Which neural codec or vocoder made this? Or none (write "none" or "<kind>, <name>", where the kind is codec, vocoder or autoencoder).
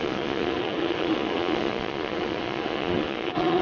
vocoder, Vocos